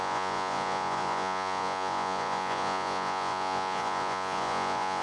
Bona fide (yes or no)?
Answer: no